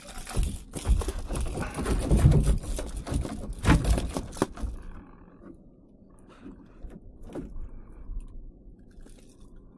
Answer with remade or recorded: recorded